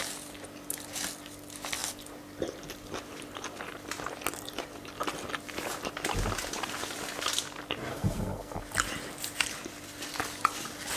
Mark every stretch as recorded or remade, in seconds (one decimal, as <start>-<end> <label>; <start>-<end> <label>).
0.0-7.9 recorded; 7.9-8.6 remade; 8.6-11.0 recorded